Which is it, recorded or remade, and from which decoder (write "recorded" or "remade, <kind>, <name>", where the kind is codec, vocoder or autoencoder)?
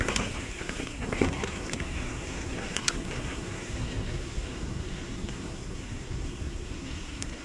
remade, codec, SNAC